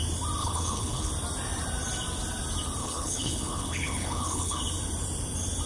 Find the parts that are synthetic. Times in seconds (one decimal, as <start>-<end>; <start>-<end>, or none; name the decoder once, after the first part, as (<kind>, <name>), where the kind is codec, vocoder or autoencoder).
0.4-1.1 (codec, HILCodec); 2.8-4.6

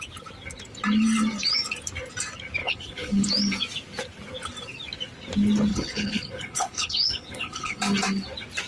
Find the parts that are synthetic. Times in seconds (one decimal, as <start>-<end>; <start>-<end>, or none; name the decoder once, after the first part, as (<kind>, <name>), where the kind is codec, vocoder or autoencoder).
2.6-3.3 (codec, HILCodec); 5.7-7.8

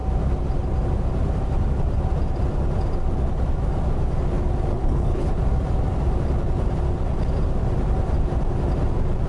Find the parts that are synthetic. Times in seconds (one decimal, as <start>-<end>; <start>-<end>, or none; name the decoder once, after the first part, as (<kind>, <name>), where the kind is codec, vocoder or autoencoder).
4.7-5.3 (codec, HILCodec)